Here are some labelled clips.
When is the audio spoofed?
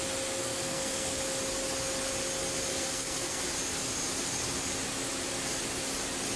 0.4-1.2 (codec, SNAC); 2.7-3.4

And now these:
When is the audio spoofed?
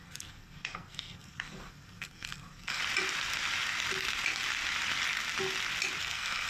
0.0-2.8 (codec, SNAC); 6.0-6.5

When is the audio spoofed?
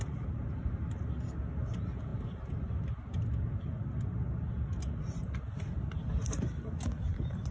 none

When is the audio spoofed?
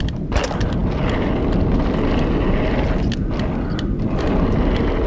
none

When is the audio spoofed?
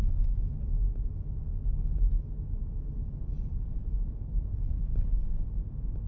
3.0-4.5 (vocoder, BigVGAN v2)